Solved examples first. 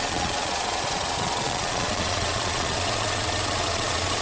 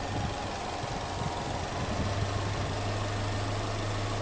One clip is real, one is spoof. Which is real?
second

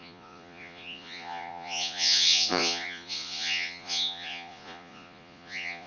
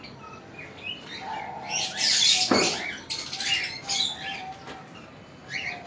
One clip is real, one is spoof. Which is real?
second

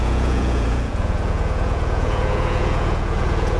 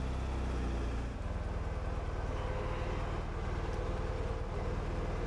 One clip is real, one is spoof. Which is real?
second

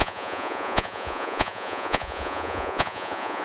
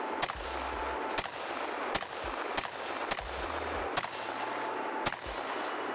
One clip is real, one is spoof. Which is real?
second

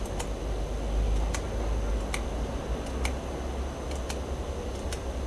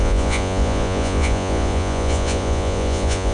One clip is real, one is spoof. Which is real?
first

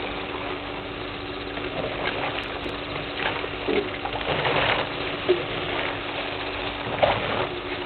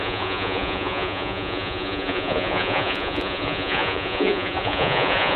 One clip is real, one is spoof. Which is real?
first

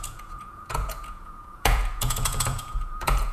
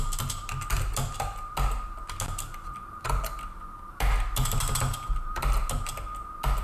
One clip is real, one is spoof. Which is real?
second